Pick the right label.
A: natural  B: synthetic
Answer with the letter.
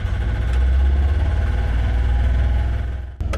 A